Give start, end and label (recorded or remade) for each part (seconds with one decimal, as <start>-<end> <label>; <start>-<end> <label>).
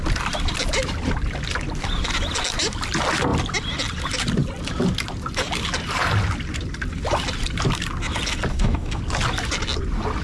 0.0-8.5 recorded; 8.5-9.0 remade; 9.0-10.2 recorded